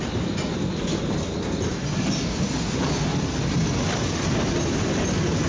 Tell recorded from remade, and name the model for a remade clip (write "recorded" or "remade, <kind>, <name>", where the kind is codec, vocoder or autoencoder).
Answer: recorded